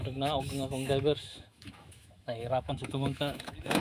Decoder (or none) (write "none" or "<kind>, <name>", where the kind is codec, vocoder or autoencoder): autoencoder, DAC-VAE